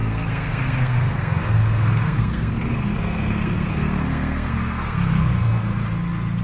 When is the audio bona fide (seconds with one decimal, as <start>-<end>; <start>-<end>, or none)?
5.7-6.4

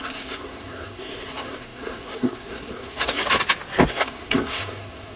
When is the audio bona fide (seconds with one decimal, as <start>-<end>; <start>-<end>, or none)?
3.2-3.9